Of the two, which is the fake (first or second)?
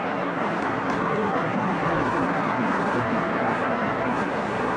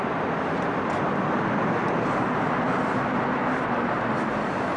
first